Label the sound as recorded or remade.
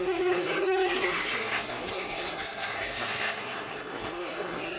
remade